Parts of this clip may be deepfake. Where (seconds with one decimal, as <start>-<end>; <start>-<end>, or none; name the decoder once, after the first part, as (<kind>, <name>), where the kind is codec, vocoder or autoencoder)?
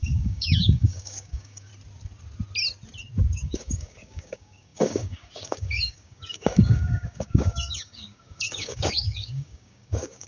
0.0-1.7 (codec, DAC); 3.3-10.3